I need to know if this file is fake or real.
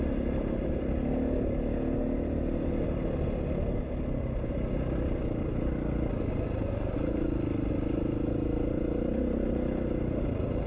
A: real